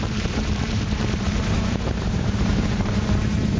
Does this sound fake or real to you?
fake